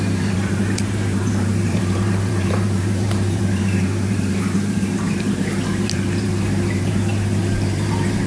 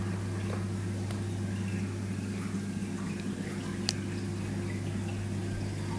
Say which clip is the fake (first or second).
first